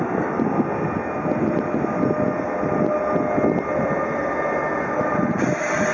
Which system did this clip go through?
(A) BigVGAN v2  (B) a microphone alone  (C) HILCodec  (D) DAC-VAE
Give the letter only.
B